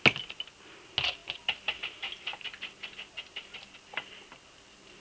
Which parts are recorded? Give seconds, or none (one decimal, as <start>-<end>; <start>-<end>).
0.0-5.0